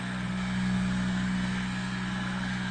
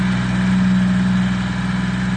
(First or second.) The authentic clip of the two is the second